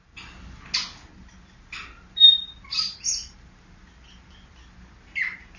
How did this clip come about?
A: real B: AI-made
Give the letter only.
A